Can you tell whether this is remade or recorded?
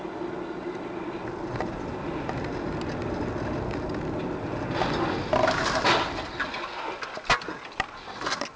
recorded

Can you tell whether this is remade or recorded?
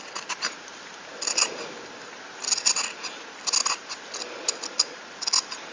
recorded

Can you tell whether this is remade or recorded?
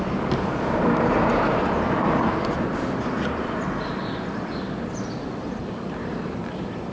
recorded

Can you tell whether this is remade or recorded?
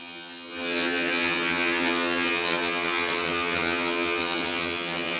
remade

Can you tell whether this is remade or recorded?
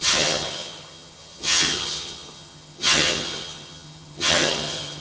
remade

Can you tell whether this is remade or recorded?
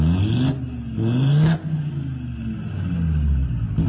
recorded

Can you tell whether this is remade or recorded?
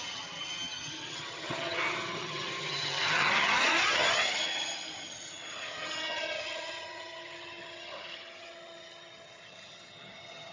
remade